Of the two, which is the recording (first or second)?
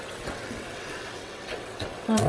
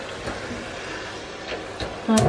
second